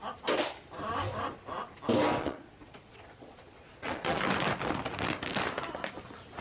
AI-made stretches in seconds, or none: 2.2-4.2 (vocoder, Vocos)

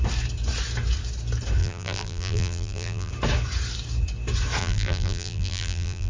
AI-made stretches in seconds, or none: 1.6-3.1 (vocoder, BigVGAN v2); 4.6-6.1

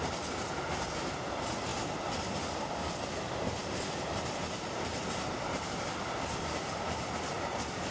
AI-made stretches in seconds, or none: 0.0-1.7 (vocoder, BigVGAN v2); 2.3-7.9